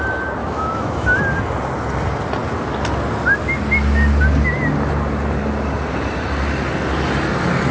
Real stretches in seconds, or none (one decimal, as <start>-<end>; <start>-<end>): 0.0-0.4; 1.2-7.7